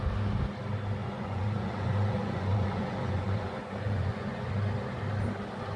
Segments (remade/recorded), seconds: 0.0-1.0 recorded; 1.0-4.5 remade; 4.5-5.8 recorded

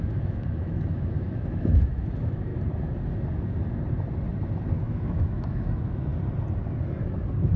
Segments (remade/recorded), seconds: 0.0-2.5 remade; 2.5-4.8 recorded; 4.8-6.1 remade; 6.1-7.6 recorded

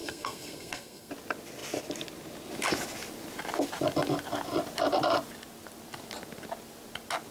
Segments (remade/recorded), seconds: 0.0-1.1 remade; 1.1-7.3 recorded

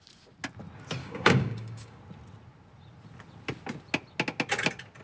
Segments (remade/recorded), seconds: 0.0-1.0 recorded; 1.0-2.0 remade; 2.0-5.0 recorded